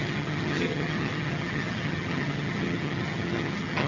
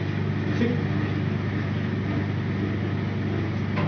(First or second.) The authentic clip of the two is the second